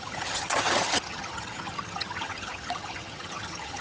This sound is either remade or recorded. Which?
remade